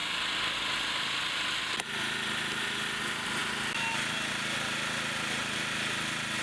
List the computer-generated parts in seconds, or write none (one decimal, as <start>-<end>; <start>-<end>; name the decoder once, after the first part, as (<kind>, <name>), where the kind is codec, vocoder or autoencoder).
none